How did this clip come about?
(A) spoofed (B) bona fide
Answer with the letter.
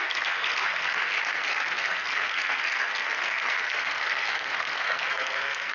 A